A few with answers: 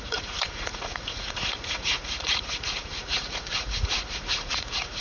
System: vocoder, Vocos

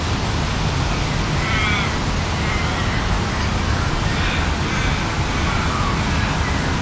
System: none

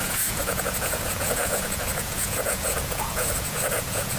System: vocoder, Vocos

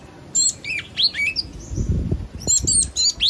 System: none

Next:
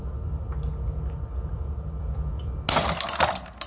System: none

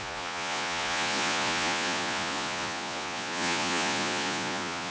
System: vocoder, Vocos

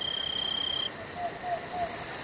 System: none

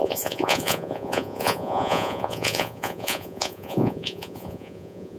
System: vocoder, Vocos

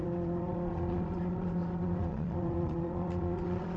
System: vocoder, Vocos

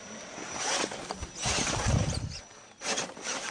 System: none